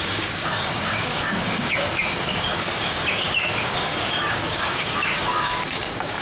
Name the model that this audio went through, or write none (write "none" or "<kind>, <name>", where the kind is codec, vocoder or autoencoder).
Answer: codec, DAC